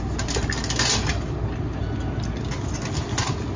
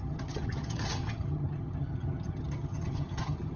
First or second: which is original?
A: first